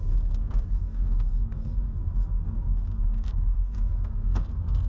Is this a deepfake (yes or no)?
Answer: yes